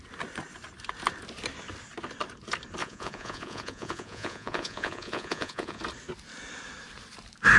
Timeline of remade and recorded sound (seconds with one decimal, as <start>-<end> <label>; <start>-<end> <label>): 0.0-2.8 recorded; 2.8-5.8 remade; 5.8-7.6 recorded